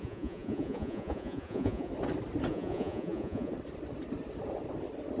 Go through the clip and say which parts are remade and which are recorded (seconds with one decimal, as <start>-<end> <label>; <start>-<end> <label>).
0.0-1.9 remade; 1.9-2.5 recorded; 2.5-3.5 remade; 3.5-5.2 recorded